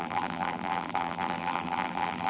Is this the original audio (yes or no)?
no